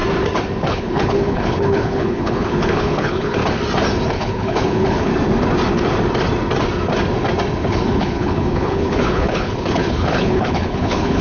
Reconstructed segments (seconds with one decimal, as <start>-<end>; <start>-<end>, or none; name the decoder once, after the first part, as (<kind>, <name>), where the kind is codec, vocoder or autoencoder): 0.7-3.4 (codec, HILCodec); 4.1-5.1; 7.6-11.2